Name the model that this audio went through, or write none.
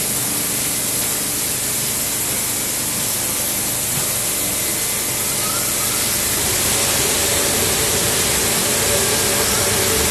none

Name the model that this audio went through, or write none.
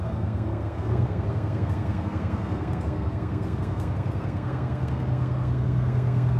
codec, SNAC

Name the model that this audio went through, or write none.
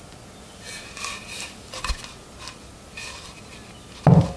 none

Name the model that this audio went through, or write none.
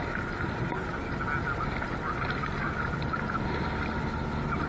none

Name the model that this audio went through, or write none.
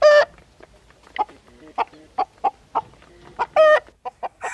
none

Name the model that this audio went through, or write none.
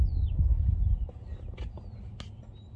none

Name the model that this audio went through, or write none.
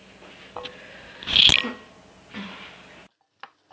none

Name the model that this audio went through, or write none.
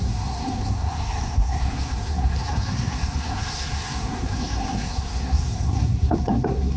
codec, SNAC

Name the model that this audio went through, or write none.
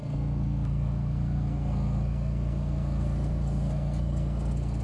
codec, SNAC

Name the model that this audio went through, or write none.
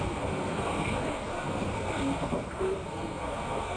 codec, SNAC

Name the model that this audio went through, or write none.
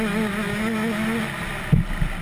none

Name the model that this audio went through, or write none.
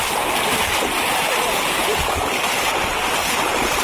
none